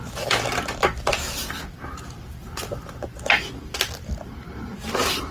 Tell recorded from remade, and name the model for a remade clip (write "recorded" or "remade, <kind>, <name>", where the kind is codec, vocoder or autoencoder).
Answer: recorded